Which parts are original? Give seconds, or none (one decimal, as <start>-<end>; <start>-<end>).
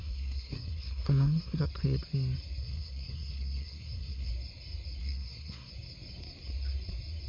1.7-2.6; 4.3-5.0; 5.7-7.3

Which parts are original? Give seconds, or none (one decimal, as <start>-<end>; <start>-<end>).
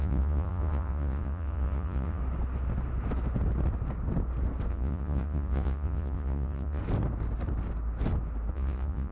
2.2-4.7; 6.8-8.5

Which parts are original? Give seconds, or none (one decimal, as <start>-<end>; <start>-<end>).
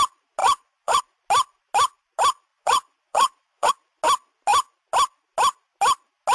0.0-0.4; 1.0-2.5; 3.7-6.3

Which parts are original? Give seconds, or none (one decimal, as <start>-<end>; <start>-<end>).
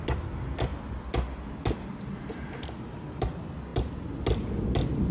0.0-5.1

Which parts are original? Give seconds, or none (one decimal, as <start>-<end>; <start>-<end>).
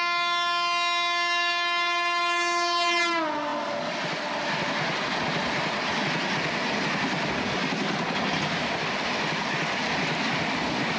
0.0-11.0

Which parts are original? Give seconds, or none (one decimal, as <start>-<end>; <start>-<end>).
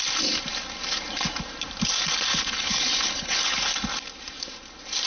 0.0-2.3; 3.7-5.1